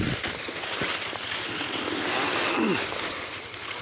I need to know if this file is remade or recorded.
recorded